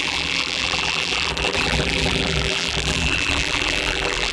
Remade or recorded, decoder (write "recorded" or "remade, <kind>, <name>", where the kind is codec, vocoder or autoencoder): remade, vocoder, BigVGAN v2